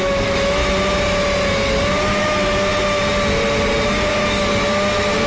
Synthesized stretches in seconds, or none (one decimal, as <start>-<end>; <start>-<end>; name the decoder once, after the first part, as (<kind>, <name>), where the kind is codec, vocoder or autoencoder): 0.0-0.6 (autoencoder, DAC-VAE); 2.2-2.7; 4.1-4.5